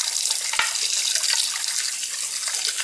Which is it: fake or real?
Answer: real